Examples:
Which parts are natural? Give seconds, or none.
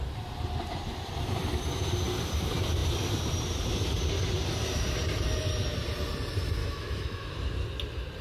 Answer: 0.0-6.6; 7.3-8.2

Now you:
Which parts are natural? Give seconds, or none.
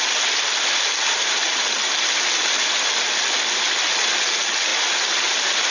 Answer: 0.0-5.7